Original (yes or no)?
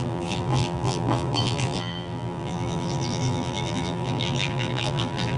no